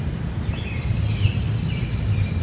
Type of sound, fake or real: real